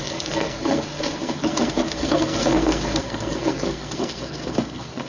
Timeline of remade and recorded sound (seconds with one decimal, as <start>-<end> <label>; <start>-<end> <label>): 0.0-5.1 remade